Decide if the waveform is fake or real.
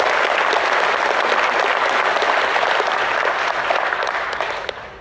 real